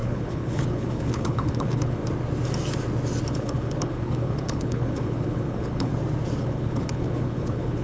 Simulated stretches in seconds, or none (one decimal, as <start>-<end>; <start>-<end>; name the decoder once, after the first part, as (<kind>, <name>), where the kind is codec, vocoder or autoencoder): 0.0-2.0 (codec, HILCodec); 3.3-5.9; 6.4-7.8